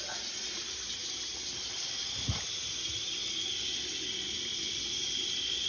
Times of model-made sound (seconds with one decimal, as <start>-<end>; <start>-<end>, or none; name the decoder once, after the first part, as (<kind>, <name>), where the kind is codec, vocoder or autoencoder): none